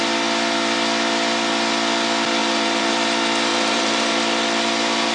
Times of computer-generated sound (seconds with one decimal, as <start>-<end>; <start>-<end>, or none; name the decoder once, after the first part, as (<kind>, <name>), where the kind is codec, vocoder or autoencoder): 2.4-2.9 (vocoder, BigVGAN v2); 3.5-4.2